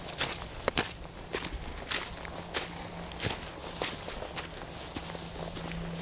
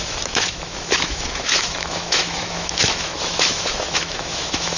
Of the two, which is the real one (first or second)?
first